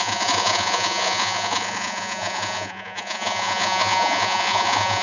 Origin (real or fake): fake